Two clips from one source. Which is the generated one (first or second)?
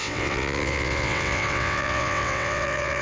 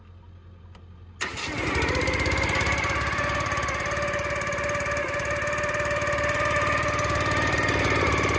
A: first